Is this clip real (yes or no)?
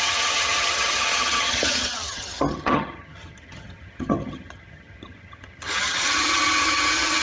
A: no